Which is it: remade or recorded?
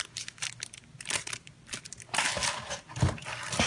recorded